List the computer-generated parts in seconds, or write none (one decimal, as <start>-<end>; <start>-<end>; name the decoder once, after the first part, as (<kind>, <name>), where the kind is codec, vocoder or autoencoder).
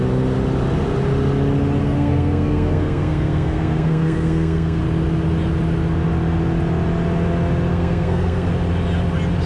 1.8-4.8 (codec, SNAC); 7.7-8.5